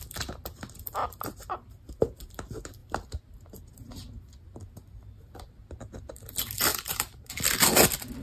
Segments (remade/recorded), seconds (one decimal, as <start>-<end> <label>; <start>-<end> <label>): 0.0-1.0 recorded; 1.0-1.9 remade; 1.9-6.7 recorded; 6.7-7.4 remade; 7.4-8.2 recorded